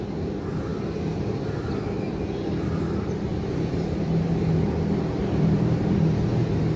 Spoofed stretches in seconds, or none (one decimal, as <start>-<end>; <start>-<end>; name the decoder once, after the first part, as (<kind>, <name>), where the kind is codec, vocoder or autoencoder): 3.3-4.1 (vocoder, BigVGAN v2); 5.2-5.9